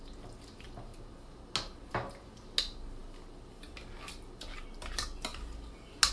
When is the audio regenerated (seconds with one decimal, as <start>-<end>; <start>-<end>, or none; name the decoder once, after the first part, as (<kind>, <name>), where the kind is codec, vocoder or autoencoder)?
none